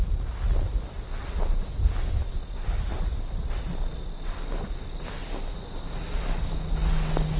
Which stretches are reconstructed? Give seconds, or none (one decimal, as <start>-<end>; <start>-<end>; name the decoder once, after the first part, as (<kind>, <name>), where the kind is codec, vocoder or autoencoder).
none

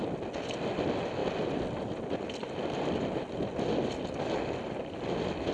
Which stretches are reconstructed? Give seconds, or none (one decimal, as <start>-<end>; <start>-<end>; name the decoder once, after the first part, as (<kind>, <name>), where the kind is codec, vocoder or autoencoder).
none

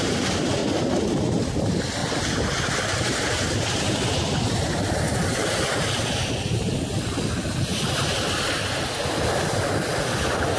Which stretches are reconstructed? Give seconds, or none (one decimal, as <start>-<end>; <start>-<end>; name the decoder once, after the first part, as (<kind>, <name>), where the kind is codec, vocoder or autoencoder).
2.0-4.0 (vocoder, BigVGAN v2)

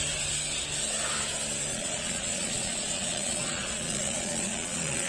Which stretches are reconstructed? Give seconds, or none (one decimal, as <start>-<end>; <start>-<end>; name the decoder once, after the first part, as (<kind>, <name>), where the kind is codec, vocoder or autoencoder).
1.7-5.1 (vocoder, Vocos)